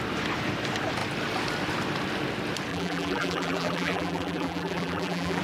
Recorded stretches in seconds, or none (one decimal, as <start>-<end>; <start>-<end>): 0.0-2.7